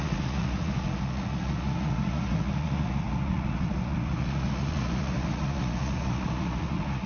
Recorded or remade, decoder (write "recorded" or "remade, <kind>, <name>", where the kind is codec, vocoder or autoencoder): remade, vocoder, Vocos